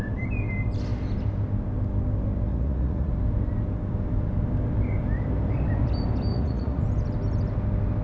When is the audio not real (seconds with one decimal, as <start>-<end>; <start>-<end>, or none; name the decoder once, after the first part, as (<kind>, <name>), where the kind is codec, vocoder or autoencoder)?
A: 2.5-3.1 (vocoder, Vocos); 6.3-6.8